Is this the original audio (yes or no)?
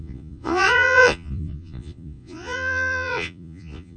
no